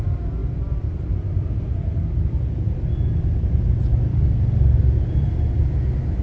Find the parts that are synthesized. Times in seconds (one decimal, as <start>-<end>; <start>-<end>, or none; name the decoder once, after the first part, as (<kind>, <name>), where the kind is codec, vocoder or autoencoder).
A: 4.1-4.8 (codec, DAC)